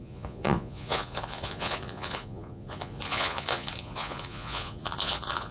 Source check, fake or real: fake